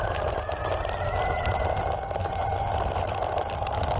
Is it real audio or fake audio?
real